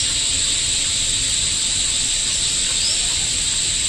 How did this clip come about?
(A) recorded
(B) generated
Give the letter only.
A